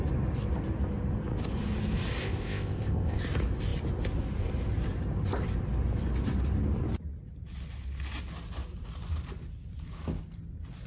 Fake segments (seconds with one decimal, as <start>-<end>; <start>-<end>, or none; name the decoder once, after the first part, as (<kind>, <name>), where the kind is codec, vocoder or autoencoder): 2.2-3.2 (codec, ZipCodec)